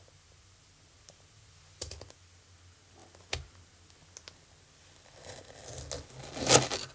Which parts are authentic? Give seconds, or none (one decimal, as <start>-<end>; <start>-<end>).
0.0-6.9

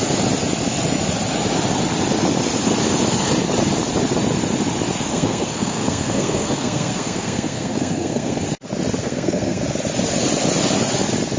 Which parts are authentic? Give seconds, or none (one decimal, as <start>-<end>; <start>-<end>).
0.0-5.1; 8.4-9.0; 9.6-11.4

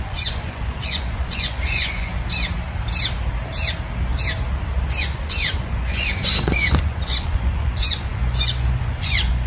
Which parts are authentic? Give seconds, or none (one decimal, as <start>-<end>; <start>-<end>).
2.1-5.0

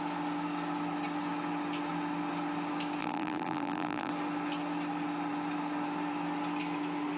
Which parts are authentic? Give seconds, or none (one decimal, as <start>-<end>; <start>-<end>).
0.0-3.0; 4.1-7.2